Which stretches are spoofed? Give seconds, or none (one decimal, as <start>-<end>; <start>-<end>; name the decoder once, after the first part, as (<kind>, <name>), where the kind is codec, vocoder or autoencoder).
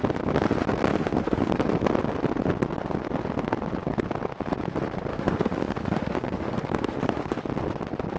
0.9-1.5 (autoencoder, DAC-VAE); 5.1-7.4